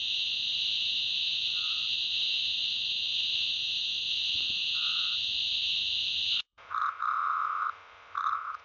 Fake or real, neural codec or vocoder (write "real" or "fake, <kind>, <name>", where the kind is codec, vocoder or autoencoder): fake, vocoder, Vocos